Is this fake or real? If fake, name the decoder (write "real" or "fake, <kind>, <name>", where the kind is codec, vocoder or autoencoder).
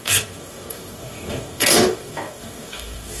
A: fake, codec, DAC